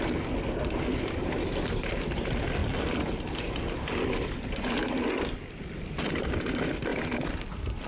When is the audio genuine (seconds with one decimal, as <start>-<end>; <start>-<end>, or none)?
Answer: 0.0-7.9